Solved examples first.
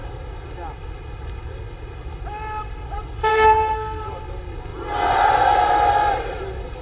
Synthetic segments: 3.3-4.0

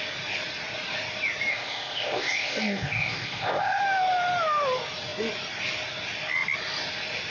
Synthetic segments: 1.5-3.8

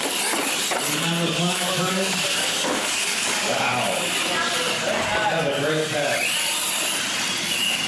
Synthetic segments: 1.4-3.7

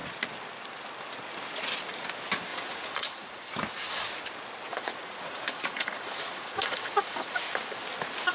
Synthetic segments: 2.5-3.4; 4.7-7.5